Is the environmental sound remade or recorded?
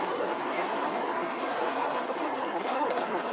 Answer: remade